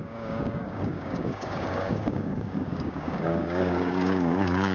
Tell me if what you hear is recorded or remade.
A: remade